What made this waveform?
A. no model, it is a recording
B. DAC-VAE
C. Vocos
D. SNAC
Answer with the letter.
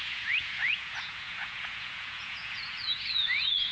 C